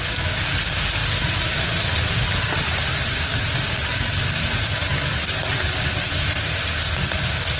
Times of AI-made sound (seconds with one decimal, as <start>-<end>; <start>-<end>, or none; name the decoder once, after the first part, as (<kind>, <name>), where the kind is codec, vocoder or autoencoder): 1.0-4.1 (vocoder, BigVGAN v2)